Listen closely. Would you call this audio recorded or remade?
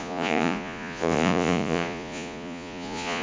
remade